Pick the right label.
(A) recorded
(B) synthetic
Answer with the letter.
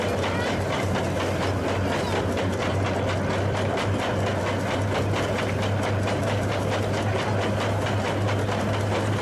A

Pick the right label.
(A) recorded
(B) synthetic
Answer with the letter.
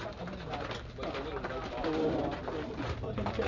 A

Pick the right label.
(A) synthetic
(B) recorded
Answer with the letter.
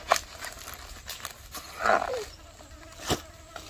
A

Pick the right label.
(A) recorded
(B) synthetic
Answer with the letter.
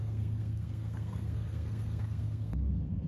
B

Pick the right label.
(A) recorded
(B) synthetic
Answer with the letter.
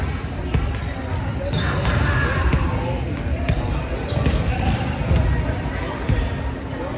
A